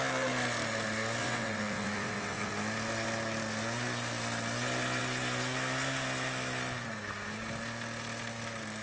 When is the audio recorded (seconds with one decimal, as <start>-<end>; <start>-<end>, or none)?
0.0-1.2; 2.5-8.8